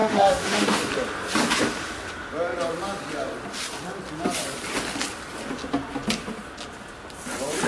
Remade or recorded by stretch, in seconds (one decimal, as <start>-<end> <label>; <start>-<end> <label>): 0.0-0.9 remade; 0.9-7.7 recorded